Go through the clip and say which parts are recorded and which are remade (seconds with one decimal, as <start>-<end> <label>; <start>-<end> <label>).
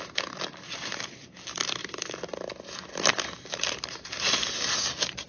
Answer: 0.0-5.3 recorded